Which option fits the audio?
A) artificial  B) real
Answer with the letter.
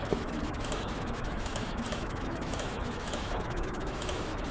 A